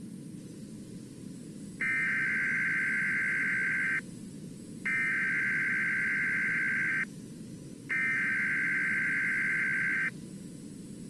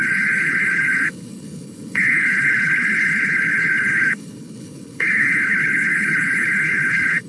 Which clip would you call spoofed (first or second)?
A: second